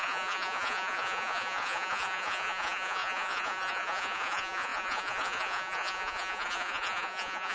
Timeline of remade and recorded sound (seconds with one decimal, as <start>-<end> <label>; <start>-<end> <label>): 0.0-7.5 remade